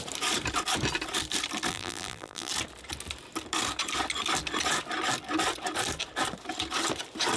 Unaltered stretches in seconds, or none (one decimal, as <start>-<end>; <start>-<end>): 0.0-1.7; 2.5-7.4